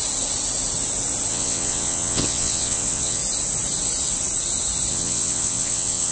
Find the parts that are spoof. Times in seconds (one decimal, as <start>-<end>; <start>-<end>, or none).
1.3-3.2; 4.9-6.1